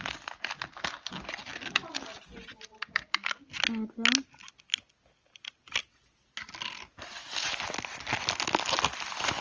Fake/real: real